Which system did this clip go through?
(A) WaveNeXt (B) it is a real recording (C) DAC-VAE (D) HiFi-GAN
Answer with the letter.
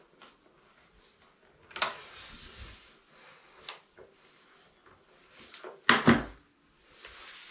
B